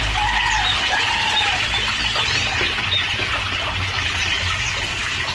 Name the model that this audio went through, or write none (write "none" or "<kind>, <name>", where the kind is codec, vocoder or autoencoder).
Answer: none